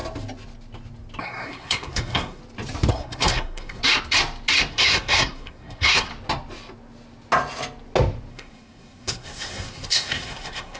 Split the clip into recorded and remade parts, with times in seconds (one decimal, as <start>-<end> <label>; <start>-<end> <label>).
0.0-1.2 recorded; 1.2-2.4 remade; 2.4-2.9 recorded; 2.9-3.8 remade; 3.8-4.7 recorded; 4.7-6.1 remade; 6.1-8.3 recorded; 8.3-10.8 remade